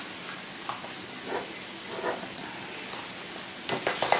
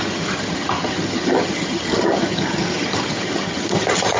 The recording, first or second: first